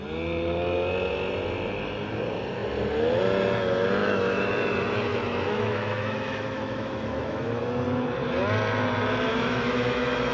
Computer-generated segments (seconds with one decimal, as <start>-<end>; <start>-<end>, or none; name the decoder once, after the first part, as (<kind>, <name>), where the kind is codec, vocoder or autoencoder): 4.0-4.5 (autoencoder, DAC-VAE); 5.1-7.6; 9.3-10.3

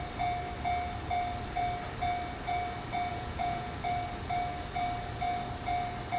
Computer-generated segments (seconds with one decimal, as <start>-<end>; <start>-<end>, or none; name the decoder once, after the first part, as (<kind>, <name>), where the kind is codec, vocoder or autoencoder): 3.1-3.7 (vocoder, Vocos)

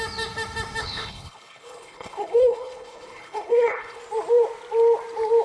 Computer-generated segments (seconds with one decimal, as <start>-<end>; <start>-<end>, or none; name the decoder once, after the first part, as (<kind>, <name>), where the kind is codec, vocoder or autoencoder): 0.8-4.0 (codec, HILCodec)

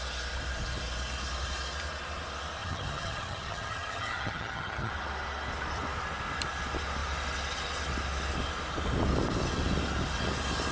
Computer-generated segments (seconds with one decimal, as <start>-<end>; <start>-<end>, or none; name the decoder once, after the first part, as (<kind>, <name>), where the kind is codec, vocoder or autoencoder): 2.6-4.9 (vocoder, HiFi-GAN)

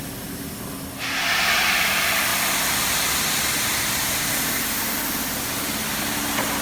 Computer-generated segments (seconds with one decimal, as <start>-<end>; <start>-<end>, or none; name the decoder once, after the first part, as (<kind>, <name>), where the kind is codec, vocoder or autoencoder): none

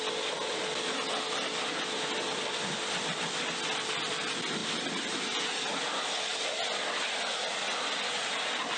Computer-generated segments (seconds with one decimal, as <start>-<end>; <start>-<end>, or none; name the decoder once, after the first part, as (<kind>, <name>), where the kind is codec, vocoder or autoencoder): none

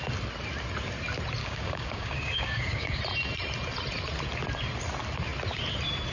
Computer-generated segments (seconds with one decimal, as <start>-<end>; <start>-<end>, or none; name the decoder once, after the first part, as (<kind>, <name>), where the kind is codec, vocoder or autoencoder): 1.4-3.0 (codec, DAC)